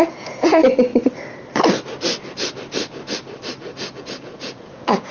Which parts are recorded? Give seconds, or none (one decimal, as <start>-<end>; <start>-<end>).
0.9-4.0